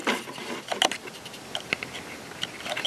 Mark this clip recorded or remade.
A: recorded